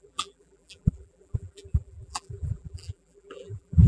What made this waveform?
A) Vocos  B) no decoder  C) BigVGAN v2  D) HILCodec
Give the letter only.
C